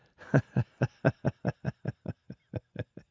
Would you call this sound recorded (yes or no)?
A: yes